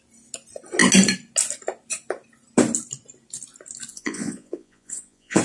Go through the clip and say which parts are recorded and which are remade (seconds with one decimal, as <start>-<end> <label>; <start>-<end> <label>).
0.0-3.9 recorded; 3.9-5.4 remade